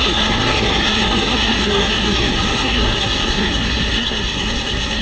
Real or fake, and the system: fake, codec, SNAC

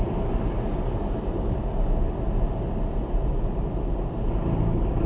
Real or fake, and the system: real